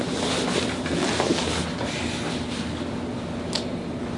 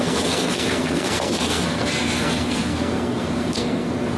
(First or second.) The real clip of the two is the first